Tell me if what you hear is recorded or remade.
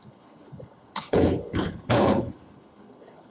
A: remade